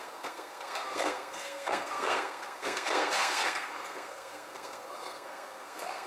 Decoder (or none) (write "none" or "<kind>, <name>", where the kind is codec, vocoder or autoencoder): codec, SNAC